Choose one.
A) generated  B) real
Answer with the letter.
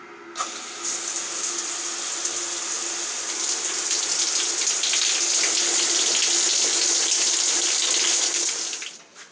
B